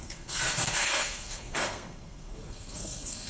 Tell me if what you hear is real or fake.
fake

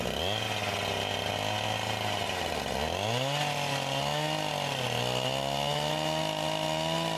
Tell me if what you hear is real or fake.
real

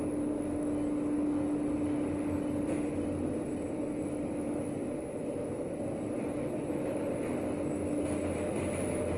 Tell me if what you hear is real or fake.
real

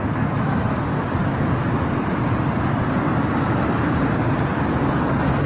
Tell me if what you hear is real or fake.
real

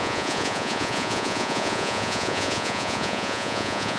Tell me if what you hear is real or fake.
fake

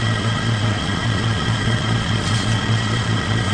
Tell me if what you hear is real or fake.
fake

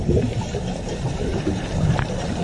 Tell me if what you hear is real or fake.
real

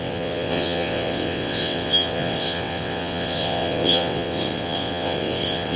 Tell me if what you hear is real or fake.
fake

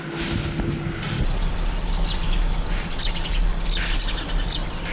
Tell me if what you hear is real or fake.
real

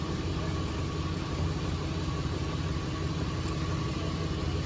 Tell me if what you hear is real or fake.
real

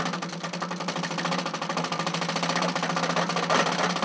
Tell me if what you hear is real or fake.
real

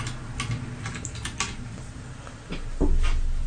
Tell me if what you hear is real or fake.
real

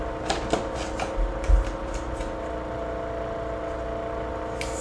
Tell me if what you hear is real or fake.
real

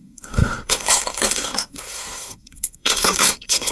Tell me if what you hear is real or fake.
fake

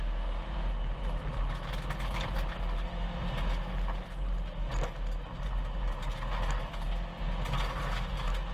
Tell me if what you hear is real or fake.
real